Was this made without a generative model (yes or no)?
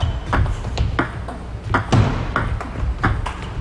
yes